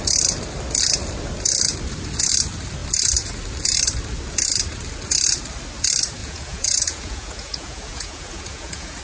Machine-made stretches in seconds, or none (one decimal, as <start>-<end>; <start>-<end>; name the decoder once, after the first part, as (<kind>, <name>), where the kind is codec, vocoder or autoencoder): 6.2-9.0 (vocoder, Vocos)